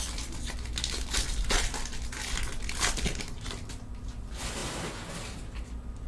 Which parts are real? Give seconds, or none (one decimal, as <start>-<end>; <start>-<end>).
0.0-4.6; 5.1-6.1